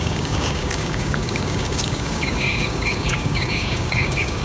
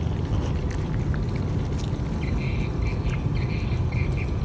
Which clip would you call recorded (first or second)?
second